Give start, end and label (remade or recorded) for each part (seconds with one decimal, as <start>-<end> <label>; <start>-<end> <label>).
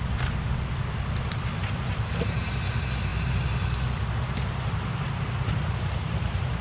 0.0-6.6 recorded